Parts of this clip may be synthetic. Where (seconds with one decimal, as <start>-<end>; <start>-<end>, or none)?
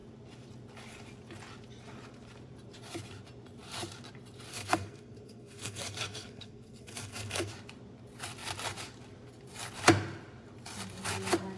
4.5-7.5